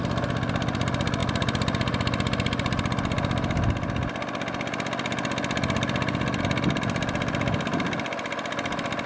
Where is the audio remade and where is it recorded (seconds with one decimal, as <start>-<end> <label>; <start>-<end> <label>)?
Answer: 0.0-9.1 recorded